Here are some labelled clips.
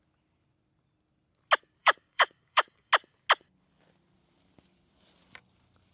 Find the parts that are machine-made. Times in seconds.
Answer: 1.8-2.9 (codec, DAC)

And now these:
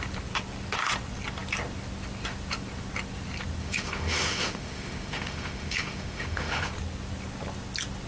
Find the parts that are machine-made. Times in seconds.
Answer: 3.6-6.7 (autoencoder, DAC-VAE)

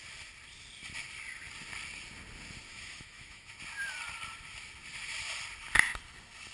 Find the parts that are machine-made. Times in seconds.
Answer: 2.7-3.5 (autoencoder, DAC-VAE)